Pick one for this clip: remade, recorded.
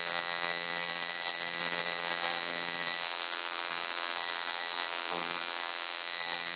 remade